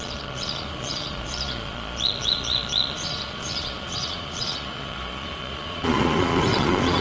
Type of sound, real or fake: fake